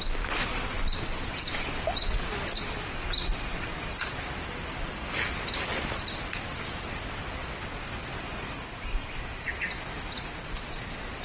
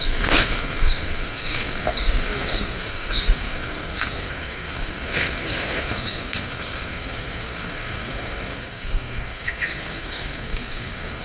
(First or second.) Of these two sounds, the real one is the first